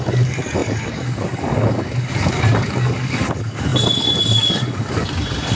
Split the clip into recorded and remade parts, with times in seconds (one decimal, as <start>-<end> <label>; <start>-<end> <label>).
0.0-5.6 remade